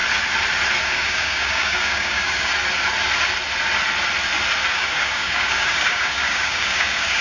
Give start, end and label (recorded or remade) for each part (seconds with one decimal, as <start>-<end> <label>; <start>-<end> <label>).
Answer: 0.0-0.8 recorded; 0.8-2.5 remade; 2.5-4.7 recorded; 4.7-7.2 remade